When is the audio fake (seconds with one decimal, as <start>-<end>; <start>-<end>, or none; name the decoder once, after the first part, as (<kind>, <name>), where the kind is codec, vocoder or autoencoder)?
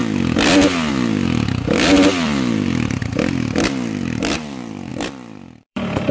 2.1-3.0 (vocoder, BigVGAN v2); 4.9-6.1